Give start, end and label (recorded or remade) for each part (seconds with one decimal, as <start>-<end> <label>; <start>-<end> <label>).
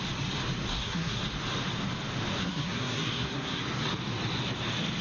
0.0-0.7 recorded; 0.7-1.2 remade; 1.2-2.4 recorded; 2.4-3.6 remade; 3.6-5.0 recorded